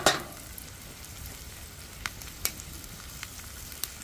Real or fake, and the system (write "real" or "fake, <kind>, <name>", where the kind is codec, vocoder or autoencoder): real